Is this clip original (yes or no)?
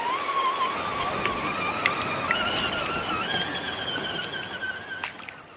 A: yes